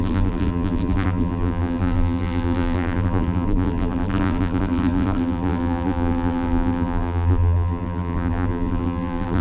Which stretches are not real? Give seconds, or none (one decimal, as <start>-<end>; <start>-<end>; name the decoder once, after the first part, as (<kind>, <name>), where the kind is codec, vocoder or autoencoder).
0.0-9.4 (vocoder, BigVGAN v2)